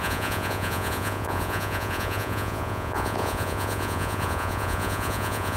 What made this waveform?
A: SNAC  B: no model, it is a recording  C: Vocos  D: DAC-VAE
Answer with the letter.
C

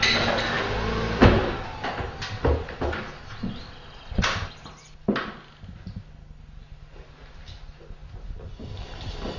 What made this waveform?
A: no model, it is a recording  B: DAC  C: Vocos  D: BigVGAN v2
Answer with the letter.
A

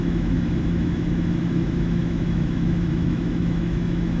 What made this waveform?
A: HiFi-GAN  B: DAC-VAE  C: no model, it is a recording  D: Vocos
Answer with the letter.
B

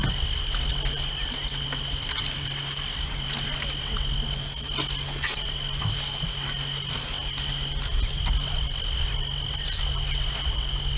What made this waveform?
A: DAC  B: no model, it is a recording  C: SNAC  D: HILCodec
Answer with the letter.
B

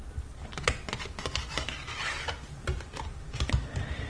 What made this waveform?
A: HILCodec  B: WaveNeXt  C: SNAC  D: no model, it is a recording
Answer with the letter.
D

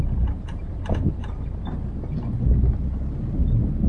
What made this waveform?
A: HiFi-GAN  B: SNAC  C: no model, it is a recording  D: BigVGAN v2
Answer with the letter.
C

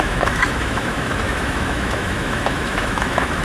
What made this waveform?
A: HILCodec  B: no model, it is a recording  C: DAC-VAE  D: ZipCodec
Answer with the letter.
C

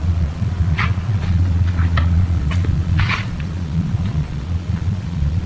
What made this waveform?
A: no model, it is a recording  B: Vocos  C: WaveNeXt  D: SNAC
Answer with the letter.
B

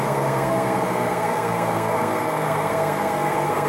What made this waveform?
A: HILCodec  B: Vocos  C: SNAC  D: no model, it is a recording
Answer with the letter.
C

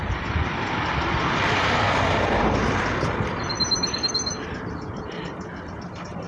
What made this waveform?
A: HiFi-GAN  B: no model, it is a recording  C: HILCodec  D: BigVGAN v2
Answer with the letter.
B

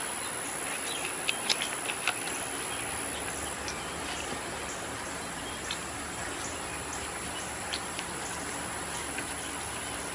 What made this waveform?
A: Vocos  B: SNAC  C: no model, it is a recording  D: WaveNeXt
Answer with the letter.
C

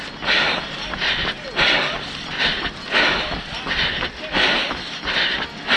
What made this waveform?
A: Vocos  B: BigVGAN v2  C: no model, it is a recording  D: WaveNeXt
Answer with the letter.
C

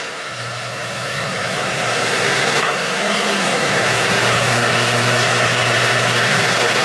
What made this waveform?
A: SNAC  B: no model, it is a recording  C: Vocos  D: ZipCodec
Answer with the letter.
A